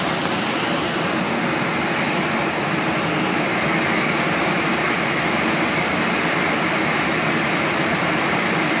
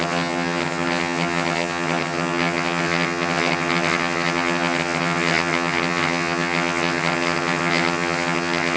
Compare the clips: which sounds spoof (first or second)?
second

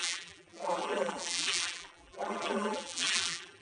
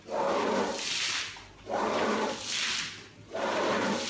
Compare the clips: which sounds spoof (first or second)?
first